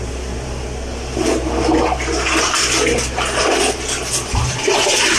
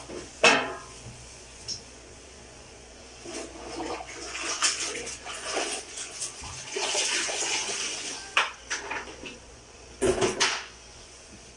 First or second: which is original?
first